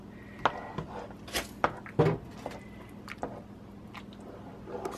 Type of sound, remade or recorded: recorded